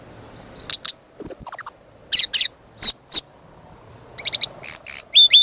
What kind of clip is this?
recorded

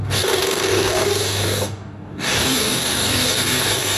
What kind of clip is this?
remade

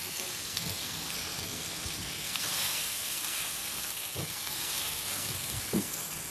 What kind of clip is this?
remade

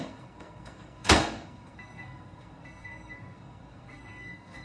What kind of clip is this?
remade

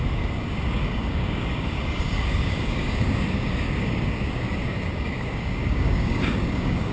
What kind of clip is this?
remade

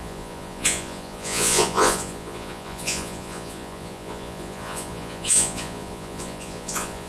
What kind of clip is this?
remade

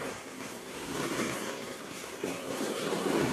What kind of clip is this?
remade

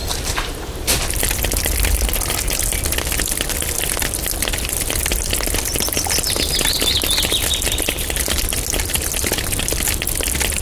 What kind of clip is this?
recorded